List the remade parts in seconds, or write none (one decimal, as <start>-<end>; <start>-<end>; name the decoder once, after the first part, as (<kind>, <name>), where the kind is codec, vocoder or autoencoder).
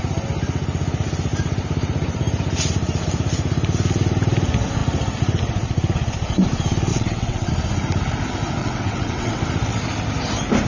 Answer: 6.9-7.5 (vocoder, WaveNeXt); 8.6-9.4